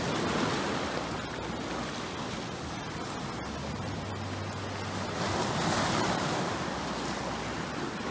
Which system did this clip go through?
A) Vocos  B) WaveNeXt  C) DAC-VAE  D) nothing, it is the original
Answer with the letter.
D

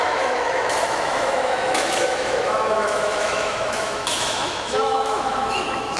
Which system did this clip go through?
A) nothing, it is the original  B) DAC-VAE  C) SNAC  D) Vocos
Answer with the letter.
B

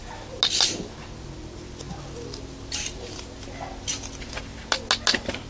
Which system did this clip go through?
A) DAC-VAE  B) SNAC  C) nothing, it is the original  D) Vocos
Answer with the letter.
C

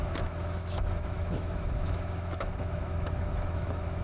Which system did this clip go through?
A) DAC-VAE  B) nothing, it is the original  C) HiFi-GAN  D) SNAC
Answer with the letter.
A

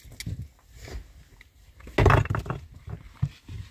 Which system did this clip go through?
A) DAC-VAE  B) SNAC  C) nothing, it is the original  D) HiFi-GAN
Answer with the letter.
C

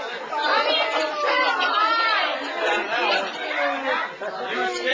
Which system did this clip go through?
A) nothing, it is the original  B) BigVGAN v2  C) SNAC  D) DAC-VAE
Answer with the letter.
A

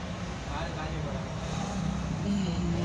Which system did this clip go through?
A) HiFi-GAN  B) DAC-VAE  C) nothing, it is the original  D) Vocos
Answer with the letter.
C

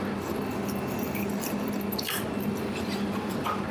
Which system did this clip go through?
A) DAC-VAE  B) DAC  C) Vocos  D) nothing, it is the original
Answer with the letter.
D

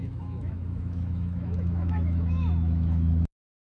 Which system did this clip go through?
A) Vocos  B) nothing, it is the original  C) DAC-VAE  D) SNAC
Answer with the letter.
C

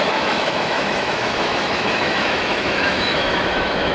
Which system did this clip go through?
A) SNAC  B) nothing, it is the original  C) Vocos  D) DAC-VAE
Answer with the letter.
D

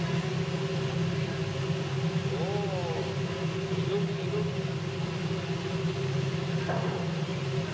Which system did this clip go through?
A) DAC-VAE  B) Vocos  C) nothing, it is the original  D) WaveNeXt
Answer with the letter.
C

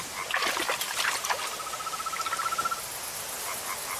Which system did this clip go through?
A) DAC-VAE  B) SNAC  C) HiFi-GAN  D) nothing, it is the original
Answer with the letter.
D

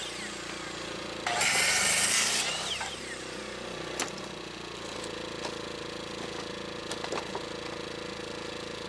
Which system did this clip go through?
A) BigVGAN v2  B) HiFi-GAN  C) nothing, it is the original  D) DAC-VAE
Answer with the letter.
C